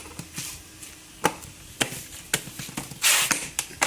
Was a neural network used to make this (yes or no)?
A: no